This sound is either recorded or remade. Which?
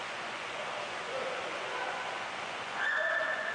remade